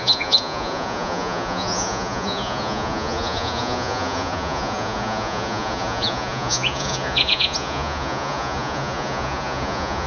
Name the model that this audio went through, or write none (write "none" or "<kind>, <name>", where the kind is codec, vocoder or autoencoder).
vocoder, Vocos